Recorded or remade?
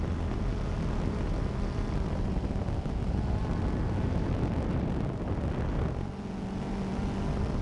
recorded